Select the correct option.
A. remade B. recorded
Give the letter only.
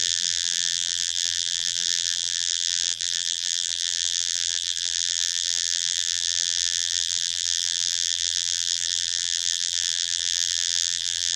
A